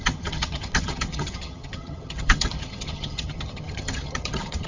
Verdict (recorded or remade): remade